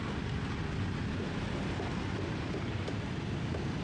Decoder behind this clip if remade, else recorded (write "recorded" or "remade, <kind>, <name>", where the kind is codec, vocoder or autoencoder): recorded